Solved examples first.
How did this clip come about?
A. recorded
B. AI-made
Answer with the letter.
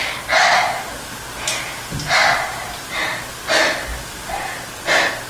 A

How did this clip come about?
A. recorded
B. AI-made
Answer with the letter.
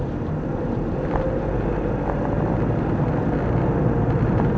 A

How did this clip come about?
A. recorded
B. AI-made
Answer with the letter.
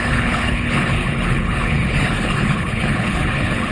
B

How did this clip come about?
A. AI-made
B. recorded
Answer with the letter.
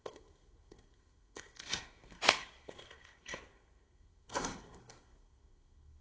A